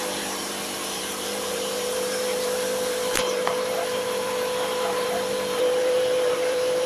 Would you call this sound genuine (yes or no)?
no